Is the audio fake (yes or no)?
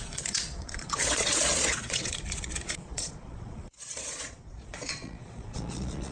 yes